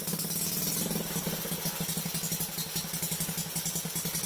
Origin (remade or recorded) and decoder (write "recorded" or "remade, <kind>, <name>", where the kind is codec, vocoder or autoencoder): recorded